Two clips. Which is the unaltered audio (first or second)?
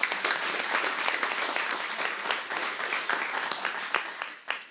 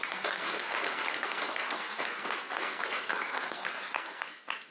first